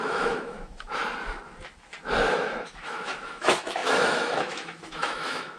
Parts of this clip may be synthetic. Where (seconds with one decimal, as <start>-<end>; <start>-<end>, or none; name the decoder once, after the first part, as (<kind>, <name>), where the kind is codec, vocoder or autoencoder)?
0.0-1.0 (autoencoder, DAC-VAE); 2.3-5.6